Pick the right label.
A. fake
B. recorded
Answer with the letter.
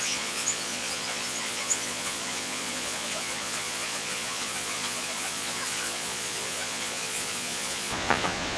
A